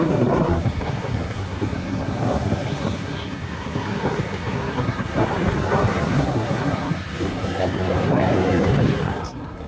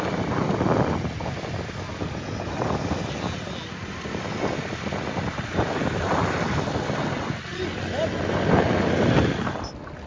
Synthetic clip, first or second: first